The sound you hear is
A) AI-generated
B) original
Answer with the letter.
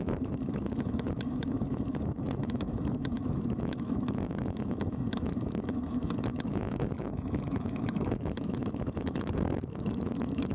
A